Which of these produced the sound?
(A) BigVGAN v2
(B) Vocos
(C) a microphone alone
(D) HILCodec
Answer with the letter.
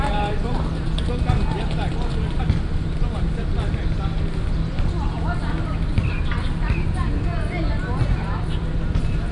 C